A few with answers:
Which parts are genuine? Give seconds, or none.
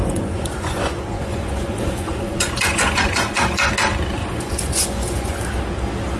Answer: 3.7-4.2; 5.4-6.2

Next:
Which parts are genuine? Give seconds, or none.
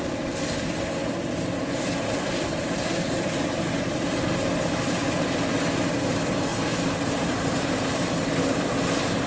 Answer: 0.0-6.5; 8.3-9.3